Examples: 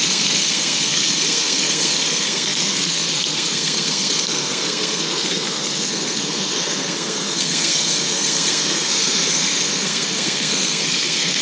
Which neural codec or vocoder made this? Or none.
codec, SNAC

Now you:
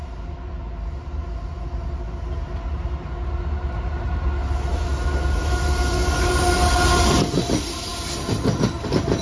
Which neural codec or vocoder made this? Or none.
none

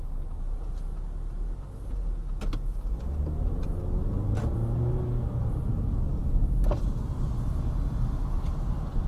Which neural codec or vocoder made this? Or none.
none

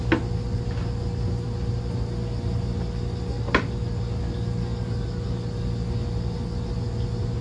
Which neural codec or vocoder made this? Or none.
none